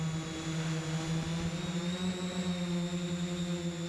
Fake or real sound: real